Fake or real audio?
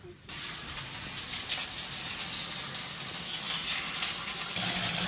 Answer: fake